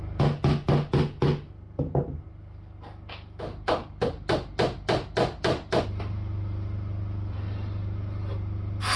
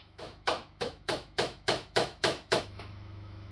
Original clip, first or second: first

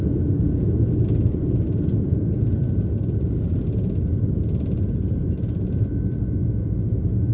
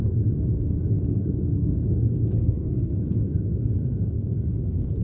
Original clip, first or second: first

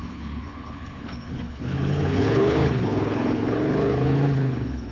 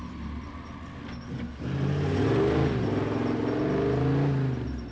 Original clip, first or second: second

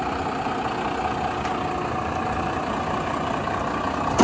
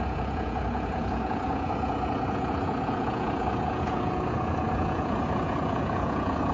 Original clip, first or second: first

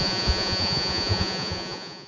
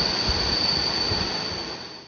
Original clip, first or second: second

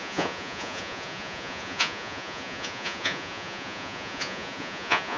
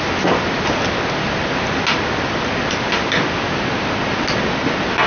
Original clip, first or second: second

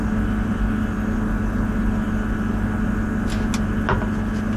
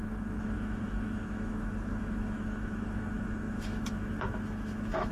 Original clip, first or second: first